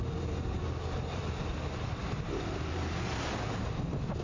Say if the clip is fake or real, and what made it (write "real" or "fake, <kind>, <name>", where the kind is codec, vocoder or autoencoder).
real